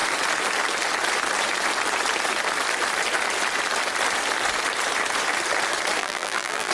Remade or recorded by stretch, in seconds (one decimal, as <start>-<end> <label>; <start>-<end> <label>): 0.0-6.0 recorded; 6.0-6.7 remade